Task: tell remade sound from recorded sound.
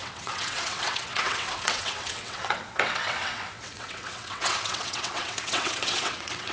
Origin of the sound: remade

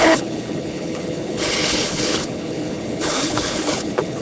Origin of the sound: remade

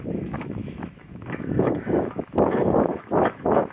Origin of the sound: remade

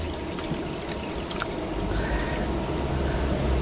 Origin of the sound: recorded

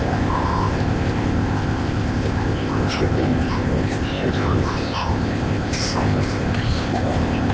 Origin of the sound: remade